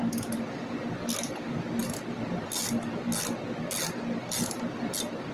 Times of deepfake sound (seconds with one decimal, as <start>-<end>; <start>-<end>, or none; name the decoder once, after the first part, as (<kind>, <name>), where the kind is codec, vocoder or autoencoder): none